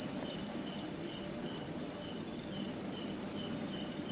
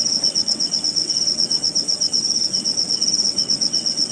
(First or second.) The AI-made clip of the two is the second